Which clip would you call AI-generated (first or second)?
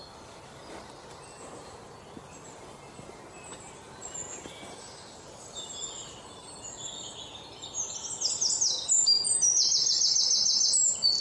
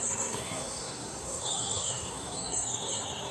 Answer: second